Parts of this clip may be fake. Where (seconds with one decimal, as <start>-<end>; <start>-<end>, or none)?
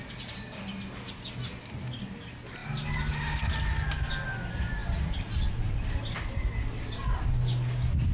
none